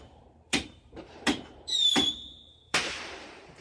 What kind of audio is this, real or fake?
fake